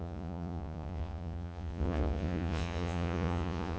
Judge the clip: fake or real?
fake